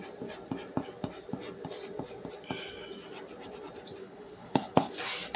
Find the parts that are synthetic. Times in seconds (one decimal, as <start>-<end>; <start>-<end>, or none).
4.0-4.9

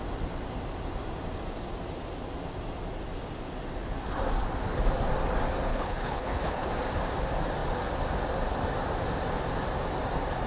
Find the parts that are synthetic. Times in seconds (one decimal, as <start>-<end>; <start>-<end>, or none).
5.7-6.7

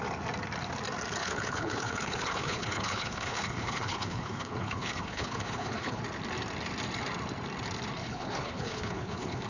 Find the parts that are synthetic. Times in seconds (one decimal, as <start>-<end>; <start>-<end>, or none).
1.2-6.0; 8.0-9.5

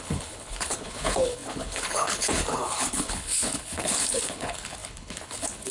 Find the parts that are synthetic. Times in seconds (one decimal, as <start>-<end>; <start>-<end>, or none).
0.0-5.7